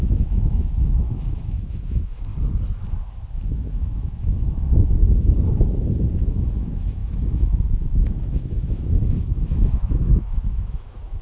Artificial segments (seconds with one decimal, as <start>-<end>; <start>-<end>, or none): 0.0-2.3; 3.5-5.0; 6.1-11.2